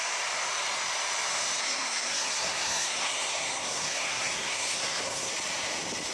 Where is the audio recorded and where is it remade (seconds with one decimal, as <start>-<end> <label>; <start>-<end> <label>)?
0.0-1.6 recorded; 1.6-5.3 remade; 5.3-6.1 recorded